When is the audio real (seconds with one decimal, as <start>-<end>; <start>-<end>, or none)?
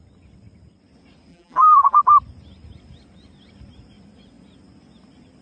0.0-1.3; 2.0-5.4